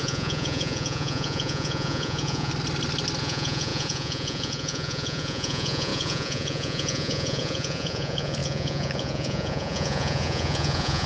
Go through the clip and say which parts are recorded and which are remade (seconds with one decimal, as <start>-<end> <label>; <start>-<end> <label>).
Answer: 0.0-2.5 remade; 2.5-3.2 recorded; 3.2-11.1 remade